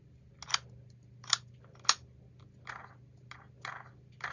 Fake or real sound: real